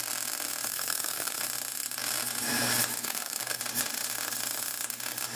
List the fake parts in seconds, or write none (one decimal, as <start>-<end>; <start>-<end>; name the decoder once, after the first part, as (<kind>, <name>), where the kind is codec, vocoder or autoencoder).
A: 0.7-1.4 (codec, SNAC); 3.0-3.6